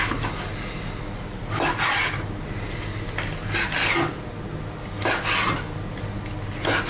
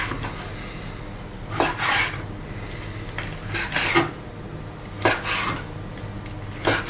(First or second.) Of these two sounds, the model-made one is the first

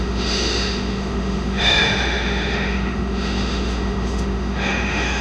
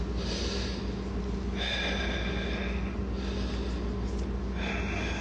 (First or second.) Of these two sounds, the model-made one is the first